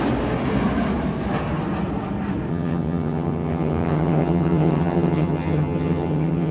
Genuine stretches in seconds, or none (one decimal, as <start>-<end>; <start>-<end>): 0.0-2.5